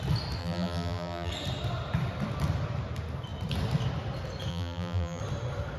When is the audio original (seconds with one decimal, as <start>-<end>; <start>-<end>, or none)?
0.0-0.4; 1.3-4.5; 5.2-5.8